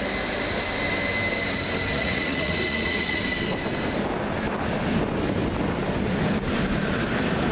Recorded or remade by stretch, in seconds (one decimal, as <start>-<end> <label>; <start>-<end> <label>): 0.0-1.9 recorded; 1.9-3.2 remade; 3.2-7.5 recorded